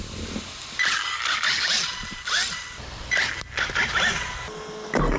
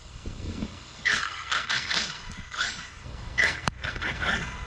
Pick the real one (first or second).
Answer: first